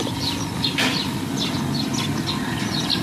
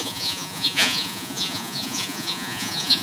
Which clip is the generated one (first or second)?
second